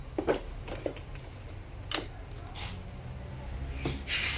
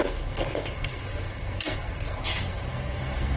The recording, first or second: first